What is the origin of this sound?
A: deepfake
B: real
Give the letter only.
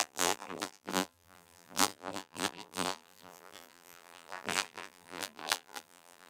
A